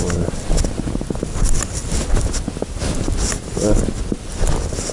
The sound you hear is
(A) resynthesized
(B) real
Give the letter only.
B